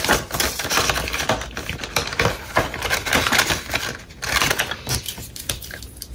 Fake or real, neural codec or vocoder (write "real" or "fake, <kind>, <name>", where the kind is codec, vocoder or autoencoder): real